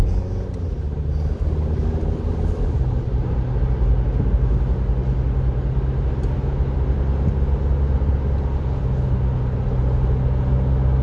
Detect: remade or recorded recorded